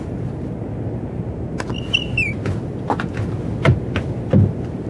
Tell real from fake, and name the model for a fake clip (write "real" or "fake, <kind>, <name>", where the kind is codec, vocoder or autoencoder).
real